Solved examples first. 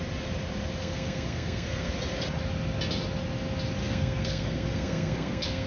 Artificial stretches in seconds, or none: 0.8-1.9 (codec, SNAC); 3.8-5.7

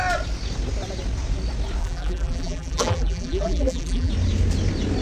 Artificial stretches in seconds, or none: 1.8-4.1 (vocoder, BigVGAN v2)

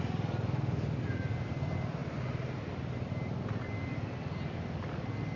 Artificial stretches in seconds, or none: none

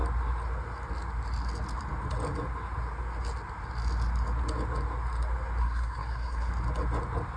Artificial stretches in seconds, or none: 5.6-6.5 (codec, SNAC)

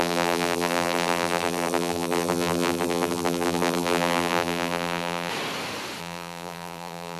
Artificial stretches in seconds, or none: 0.0-5.3 (vocoder, BigVGAN v2); 6.0-7.2